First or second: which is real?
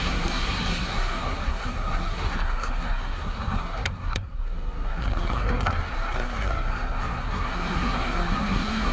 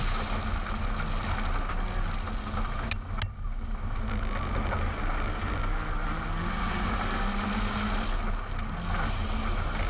second